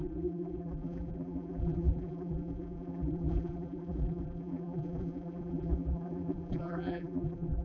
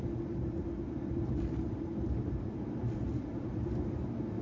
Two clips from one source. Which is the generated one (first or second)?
first